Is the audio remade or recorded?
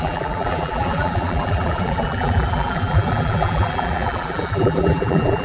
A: remade